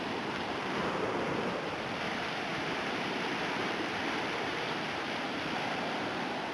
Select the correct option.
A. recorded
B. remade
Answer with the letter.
B